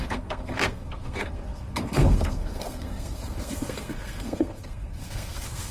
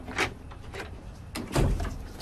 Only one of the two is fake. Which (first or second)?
first